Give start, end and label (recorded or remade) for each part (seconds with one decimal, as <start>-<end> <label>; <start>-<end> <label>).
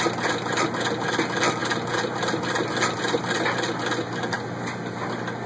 0.0-5.5 recorded